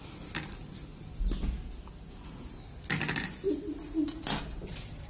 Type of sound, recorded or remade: recorded